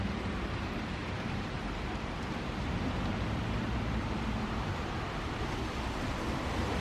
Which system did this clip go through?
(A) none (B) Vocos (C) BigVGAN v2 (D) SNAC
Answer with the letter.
C